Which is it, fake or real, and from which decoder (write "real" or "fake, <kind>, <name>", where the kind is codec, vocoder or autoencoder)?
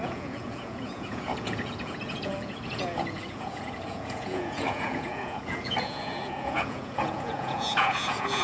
fake, vocoder, Vocos